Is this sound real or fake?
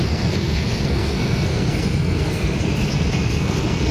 fake